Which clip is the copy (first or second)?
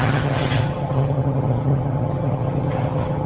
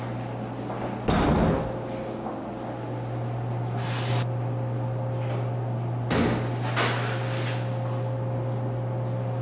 first